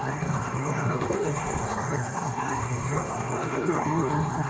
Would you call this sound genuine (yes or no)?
no